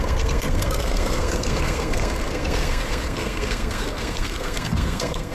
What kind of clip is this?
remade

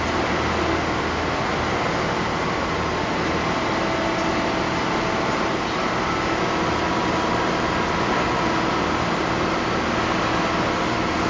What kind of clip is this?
recorded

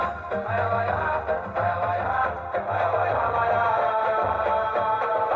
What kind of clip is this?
recorded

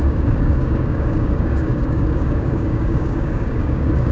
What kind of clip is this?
remade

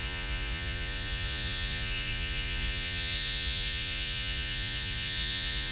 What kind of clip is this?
remade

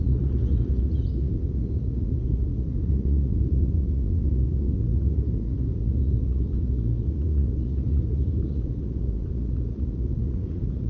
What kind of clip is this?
remade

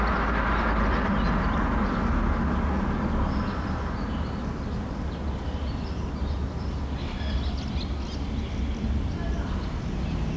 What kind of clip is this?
recorded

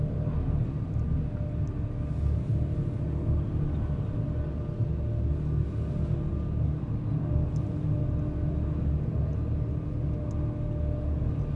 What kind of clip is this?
recorded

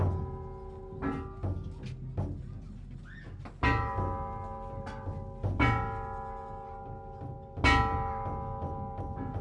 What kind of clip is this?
recorded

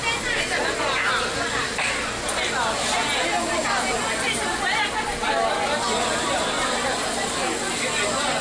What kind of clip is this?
recorded